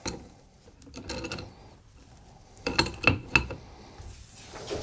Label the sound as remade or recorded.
recorded